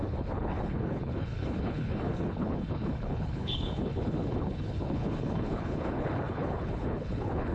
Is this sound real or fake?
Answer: fake